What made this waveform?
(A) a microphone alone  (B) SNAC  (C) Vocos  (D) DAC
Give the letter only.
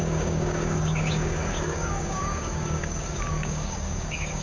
D